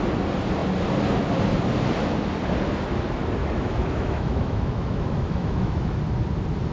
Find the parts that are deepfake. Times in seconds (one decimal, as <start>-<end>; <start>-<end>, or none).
3.4-6.0